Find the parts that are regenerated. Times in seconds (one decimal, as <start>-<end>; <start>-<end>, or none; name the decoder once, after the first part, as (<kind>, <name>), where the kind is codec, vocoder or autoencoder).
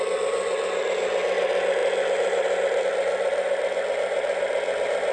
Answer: none